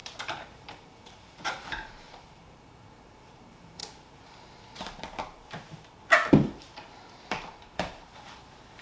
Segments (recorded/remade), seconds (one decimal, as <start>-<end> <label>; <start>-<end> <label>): 0.0-3.8 remade; 3.8-6.3 recorded; 6.3-8.8 remade